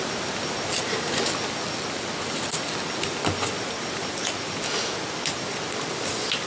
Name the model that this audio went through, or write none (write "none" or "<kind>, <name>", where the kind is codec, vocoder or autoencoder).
none